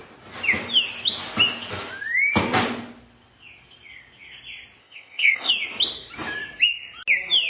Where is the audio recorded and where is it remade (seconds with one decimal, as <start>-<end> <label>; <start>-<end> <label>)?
0.0-4.8 recorded; 4.8-5.5 remade; 5.5-7.5 recorded